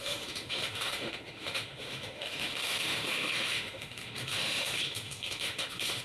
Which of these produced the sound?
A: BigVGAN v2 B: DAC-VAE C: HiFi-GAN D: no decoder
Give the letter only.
B